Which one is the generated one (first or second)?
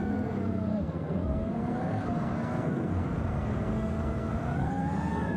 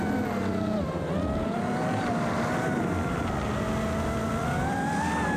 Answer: first